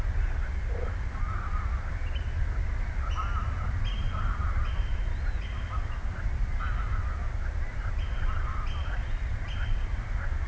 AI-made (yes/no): no